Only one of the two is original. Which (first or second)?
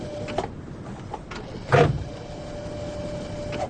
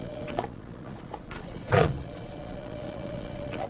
first